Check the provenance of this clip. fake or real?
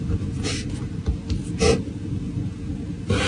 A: real